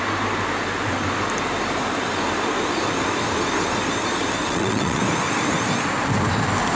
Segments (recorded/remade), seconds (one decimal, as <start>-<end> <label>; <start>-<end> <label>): 0.0-4.4 recorded; 4.4-5.0 remade; 5.0-6.8 recorded